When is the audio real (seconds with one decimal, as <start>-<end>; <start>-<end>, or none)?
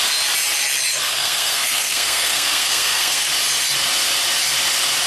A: 0.0-0.9; 3.3-5.1